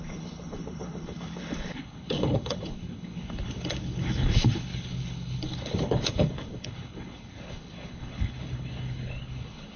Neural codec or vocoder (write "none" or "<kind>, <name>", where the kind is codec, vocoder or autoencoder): codec, HILCodec